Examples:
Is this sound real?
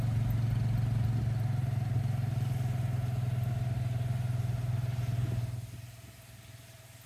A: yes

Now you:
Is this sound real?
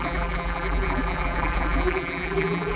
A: no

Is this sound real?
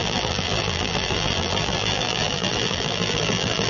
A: no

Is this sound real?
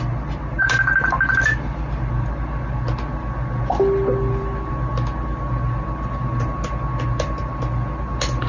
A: yes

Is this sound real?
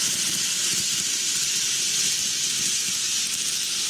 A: yes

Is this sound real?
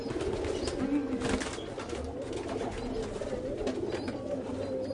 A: yes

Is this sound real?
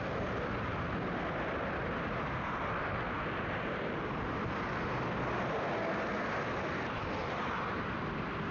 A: yes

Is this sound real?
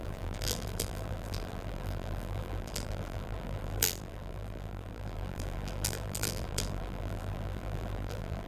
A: no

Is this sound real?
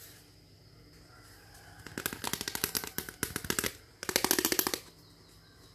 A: yes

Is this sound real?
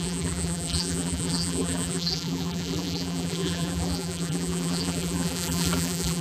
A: no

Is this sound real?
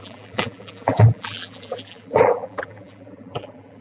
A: no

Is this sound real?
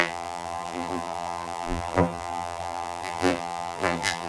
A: no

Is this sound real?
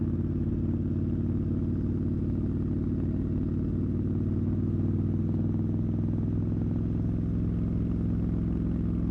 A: yes